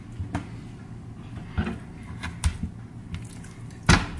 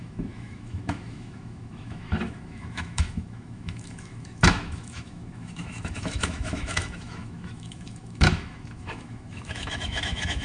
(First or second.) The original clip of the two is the first